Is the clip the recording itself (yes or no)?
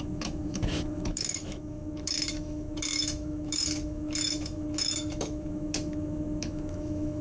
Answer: no